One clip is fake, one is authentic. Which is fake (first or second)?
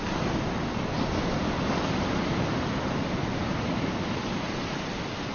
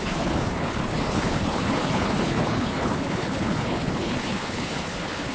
second